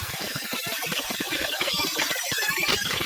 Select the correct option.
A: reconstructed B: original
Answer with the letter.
A